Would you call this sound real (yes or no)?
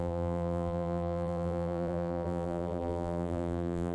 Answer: no